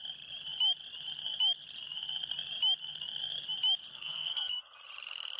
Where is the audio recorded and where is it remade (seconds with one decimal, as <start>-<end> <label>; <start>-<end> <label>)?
0.0-3.9 recorded; 3.9-4.6 remade; 4.6-5.4 recorded